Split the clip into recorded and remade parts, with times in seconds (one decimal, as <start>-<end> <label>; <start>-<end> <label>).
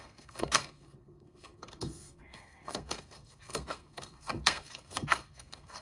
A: 0.0-5.8 remade